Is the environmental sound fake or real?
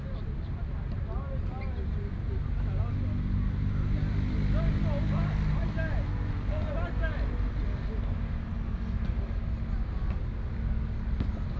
real